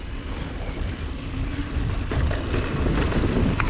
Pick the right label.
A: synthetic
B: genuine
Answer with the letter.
B